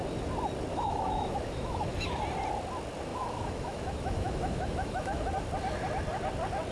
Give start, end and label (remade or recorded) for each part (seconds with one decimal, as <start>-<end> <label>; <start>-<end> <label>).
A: 0.0-0.7 recorded; 0.7-2.2 remade; 2.2-3.1 recorded; 3.1-5.3 remade; 5.3-6.7 recorded